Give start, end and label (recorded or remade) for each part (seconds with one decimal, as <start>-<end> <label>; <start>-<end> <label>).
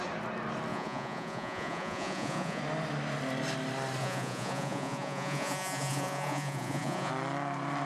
0.0-0.7 recorded; 0.7-2.6 remade; 2.6-4.0 recorded; 4.0-7.1 remade; 7.1-7.9 recorded